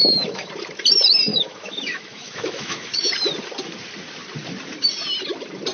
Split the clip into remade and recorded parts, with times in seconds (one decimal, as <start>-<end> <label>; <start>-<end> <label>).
0.0-0.5 remade; 0.5-1.3 recorded; 1.3-3.1 remade; 3.1-5.7 recorded

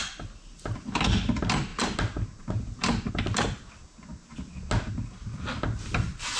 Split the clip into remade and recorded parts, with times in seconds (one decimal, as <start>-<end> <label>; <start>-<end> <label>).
0.0-6.4 recorded

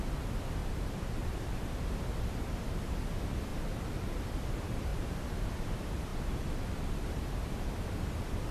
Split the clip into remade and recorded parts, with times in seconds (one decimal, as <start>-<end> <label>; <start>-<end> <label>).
0.0-0.6 recorded; 0.6-1.3 remade; 1.3-3.5 recorded; 3.5-4.2 remade; 4.2-4.9 recorded; 4.9-5.6 remade; 5.6-6.1 recorded; 6.1-7.1 remade; 7.1-8.5 recorded

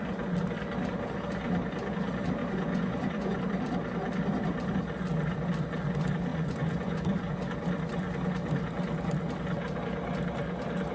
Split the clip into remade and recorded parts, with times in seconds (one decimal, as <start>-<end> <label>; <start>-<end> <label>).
0.0-2.4 recorded; 2.4-3.4 remade; 3.4-6.3 recorded; 6.3-7.0 remade; 7.0-10.9 recorded

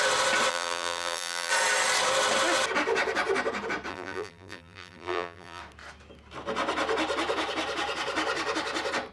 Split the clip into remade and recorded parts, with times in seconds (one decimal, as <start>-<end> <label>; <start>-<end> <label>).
0.0-0.5 recorded; 0.5-1.5 remade; 1.5-3.9 recorded; 3.9-5.6 remade; 5.6-9.1 recorded